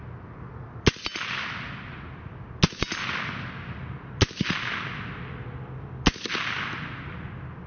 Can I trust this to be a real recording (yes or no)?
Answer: yes